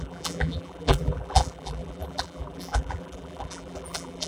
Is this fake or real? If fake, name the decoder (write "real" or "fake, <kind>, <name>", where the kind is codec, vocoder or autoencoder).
fake, vocoder, BigVGAN v2